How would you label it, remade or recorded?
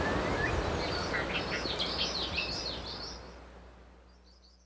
recorded